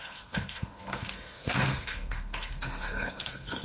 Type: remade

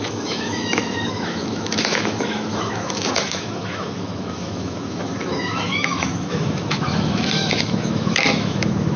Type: remade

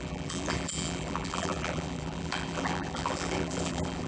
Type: remade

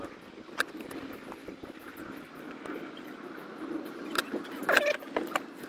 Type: recorded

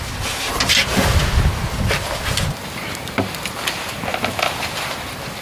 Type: recorded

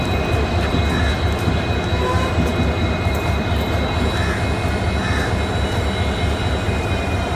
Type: recorded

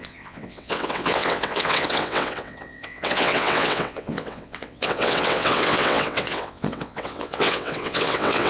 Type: remade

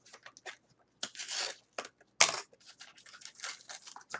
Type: recorded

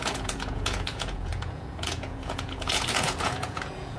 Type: remade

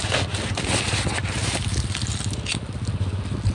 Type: recorded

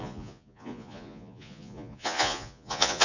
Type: remade